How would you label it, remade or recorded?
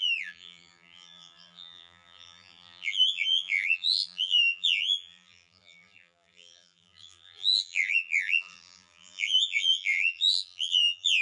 remade